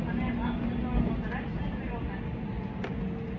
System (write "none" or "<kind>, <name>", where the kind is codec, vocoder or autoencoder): none